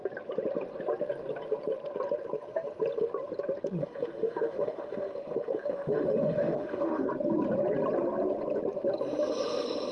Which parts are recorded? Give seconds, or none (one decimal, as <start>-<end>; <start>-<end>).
0.0-3.8; 7.1-9.9